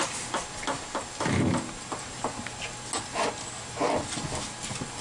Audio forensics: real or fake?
real